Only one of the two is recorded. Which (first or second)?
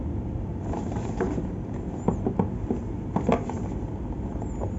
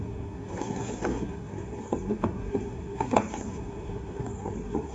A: first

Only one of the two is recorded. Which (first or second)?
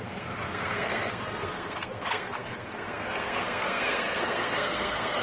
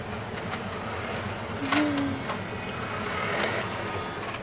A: second